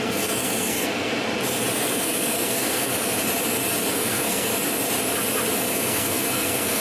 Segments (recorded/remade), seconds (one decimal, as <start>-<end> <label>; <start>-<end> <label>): 0.0-1.1 remade; 1.1-1.8 recorded; 1.8-2.9 remade; 2.9-3.9 recorded; 3.9-4.5 remade; 4.5-5.7 recorded; 5.7-6.8 remade